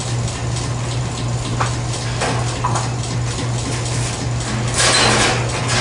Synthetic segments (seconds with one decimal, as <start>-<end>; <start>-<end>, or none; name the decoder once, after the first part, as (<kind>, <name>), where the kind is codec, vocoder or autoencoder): none